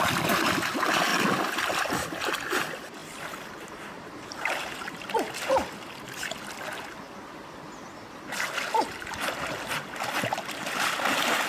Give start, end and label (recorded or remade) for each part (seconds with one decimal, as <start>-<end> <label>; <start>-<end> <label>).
0.0-3.0 recorded; 3.0-5.1 remade; 5.1-11.5 recorded